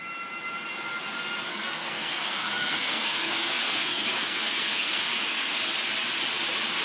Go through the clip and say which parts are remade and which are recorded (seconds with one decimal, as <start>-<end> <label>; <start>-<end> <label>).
0.0-1.5 recorded; 1.5-5.6 remade; 5.6-6.8 recorded